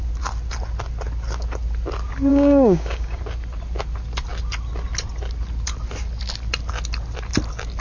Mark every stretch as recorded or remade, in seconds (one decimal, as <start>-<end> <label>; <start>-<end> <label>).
0.0-2.3 recorded; 2.3-3.2 remade; 3.2-7.8 recorded